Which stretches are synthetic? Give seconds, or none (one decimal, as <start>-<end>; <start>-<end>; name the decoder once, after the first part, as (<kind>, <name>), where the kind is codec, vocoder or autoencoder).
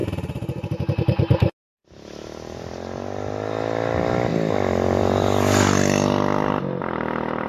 none